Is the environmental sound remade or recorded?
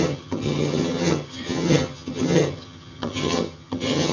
remade